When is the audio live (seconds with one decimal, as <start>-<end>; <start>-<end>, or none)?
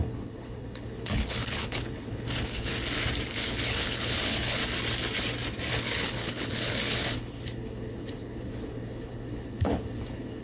2.7-3.3; 4.6-5.7